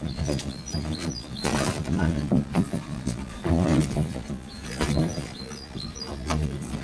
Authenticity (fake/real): fake